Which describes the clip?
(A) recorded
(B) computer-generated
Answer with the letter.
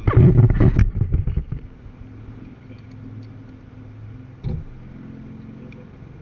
A